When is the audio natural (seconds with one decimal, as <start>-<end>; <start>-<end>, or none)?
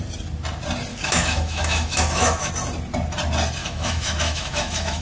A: 0.0-0.9; 2.5-3.6